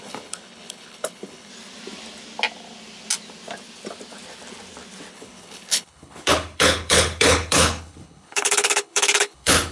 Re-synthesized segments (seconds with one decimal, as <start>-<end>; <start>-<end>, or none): 0.0-1.5; 5.1-9.7